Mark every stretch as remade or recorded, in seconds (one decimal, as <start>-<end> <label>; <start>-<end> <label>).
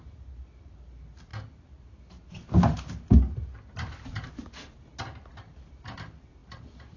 0.0-7.0 recorded